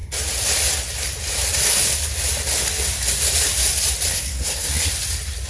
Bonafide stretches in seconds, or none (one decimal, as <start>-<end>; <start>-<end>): 0.0-4.1; 4.9-5.5